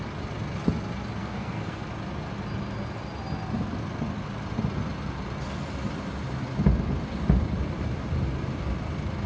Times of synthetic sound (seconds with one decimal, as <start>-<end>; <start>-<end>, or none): 1.2-1.8